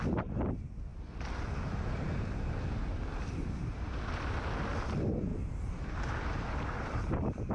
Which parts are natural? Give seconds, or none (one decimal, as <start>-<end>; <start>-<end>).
0.0-5.3

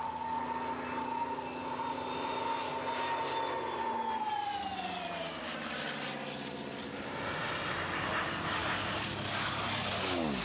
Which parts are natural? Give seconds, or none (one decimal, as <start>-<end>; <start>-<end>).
0.0-8.6

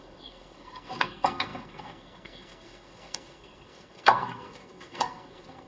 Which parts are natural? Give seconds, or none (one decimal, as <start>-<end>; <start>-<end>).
none

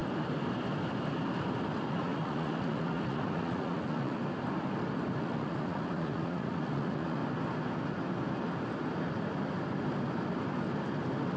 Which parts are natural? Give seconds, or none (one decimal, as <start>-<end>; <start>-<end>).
0.0-1.9; 4.2-5.2; 7.2-11.4

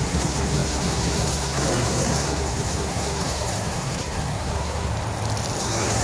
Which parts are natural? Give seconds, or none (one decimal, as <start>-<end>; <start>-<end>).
4.9-5.6

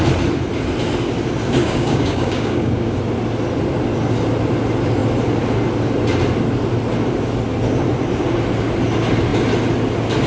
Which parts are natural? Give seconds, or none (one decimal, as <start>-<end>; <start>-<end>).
0.0-1.6; 3.0-10.3